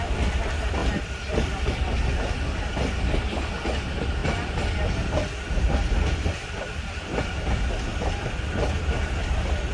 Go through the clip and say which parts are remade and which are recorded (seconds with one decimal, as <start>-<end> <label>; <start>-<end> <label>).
0.0-0.8 recorded; 0.8-1.7 remade; 1.7-9.7 recorded